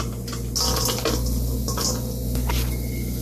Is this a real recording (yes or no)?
yes